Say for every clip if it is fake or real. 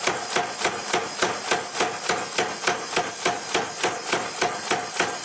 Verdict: real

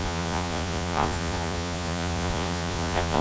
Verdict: fake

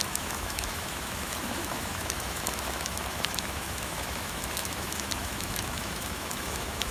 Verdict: fake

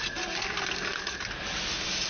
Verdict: real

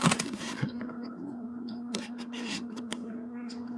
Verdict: fake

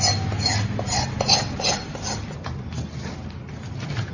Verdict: real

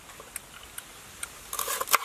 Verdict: real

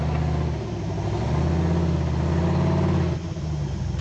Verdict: real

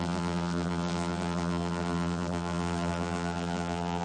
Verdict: fake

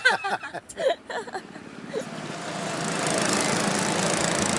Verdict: real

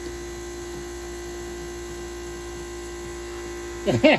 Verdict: real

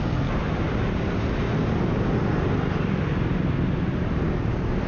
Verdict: real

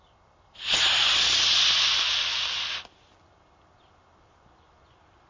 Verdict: real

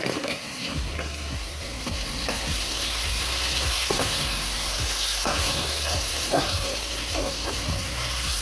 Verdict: fake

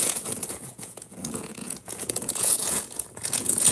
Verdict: fake